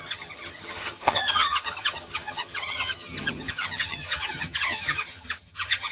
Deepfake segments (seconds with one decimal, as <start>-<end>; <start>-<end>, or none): 0.0-5.9